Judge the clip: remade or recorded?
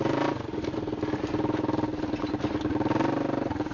recorded